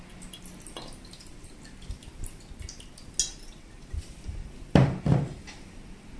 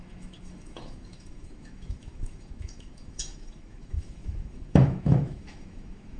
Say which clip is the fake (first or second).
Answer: second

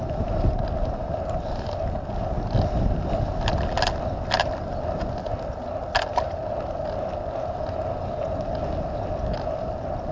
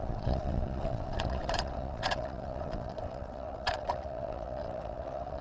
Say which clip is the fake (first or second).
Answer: second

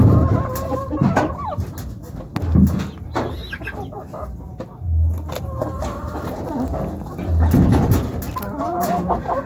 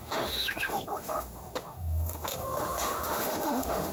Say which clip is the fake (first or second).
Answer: second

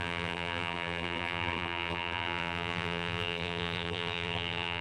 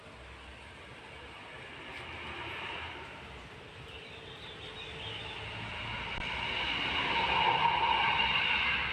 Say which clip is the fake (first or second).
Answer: first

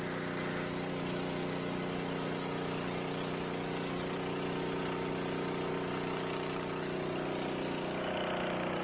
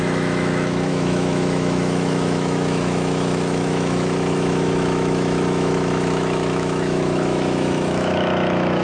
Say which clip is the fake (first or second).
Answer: second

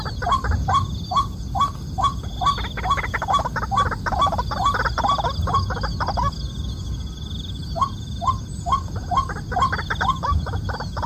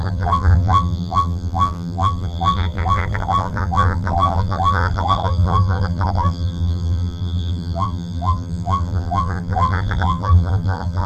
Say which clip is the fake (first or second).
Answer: second